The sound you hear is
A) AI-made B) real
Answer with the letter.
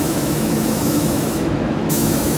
A